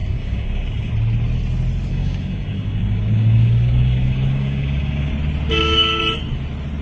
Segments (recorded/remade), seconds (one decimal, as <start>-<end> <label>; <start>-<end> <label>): 0.0-0.9 remade; 0.9-1.9 recorded; 1.9-5.1 remade; 5.1-5.5 recorded; 5.5-6.0 remade; 6.0-6.8 recorded